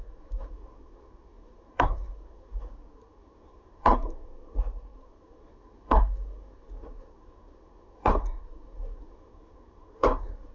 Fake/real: fake